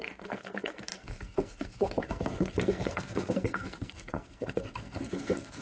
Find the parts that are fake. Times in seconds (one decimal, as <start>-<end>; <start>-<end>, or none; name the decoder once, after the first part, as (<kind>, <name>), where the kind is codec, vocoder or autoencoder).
0.0-5.6 (codec, SNAC)